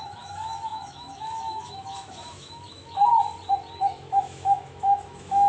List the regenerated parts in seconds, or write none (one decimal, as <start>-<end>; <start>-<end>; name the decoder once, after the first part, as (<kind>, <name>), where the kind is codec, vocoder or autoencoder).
0.0-3.0 (autoencoder, DAC-VAE); 3.8-5.5